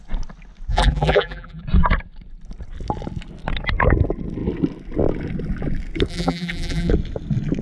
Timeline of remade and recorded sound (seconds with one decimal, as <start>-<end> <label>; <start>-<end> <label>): 0.0-0.7 recorded; 0.7-1.6 remade; 1.6-6.1 recorded; 6.1-6.9 remade; 6.9-7.6 recorded